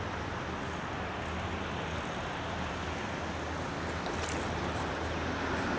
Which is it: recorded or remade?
recorded